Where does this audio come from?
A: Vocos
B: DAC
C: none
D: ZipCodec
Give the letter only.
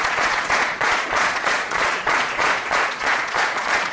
A